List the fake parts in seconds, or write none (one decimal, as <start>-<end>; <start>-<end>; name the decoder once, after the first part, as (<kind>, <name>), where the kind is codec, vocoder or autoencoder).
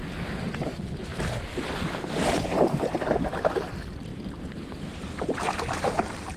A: 1.1-3.1 (vocoder, BigVGAN v2); 4.1-5.5